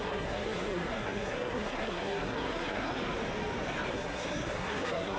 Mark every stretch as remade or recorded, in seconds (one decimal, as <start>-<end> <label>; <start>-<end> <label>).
0.0-2.9 remade; 2.9-3.9 recorded; 3.9-5.2 remade